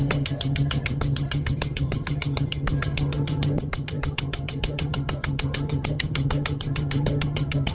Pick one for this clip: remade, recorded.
remade